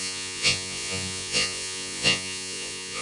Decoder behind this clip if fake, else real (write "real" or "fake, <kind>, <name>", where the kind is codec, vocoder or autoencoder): fake, vocoder, Vocos